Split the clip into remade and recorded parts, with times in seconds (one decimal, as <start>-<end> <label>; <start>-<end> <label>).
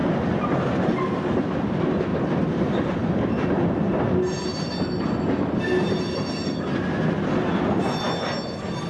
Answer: 0.0-8.9 recorded